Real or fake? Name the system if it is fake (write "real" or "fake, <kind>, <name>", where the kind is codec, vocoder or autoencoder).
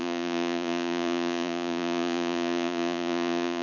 fake, vocoder, Vocos